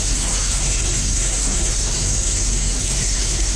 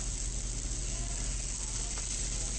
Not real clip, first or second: first